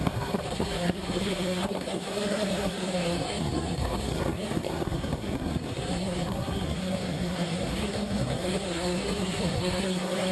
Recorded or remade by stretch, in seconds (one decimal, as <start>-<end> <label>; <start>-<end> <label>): 0.0-10.3 remade